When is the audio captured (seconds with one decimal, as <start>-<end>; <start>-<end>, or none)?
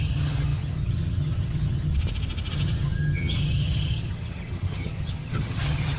1.9-2.5